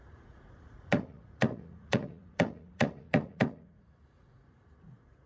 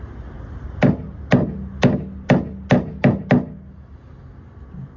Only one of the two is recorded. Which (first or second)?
second